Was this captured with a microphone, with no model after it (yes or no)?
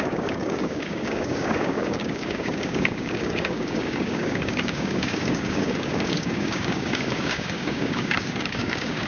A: no